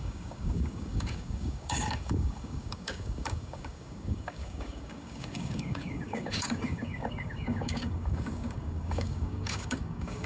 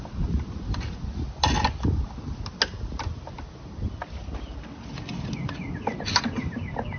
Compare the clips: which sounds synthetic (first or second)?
first